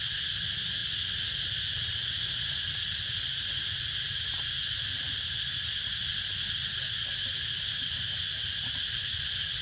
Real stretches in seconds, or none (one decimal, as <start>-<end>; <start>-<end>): 0.0-9.6